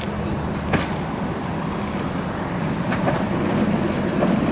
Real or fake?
real